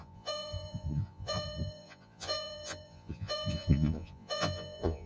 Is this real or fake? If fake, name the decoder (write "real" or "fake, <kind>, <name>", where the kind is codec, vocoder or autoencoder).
fake, vocoder, Vocos